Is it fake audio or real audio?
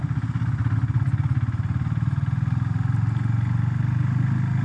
real